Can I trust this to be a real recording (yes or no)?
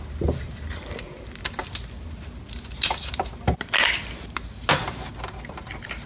yes